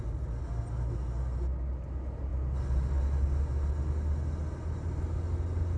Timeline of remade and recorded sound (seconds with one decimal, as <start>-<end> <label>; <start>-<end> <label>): 0.0-5.8 recorded